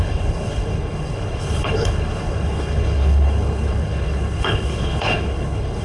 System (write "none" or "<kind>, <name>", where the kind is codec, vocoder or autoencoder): codec, HILCodec